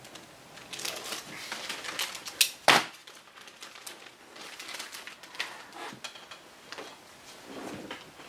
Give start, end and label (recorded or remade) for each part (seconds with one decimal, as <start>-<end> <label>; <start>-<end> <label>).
0.0-8.3 recorded